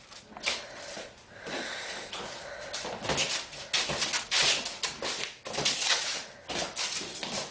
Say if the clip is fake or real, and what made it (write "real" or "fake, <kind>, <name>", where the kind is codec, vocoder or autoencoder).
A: real